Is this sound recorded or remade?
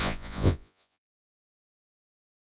remade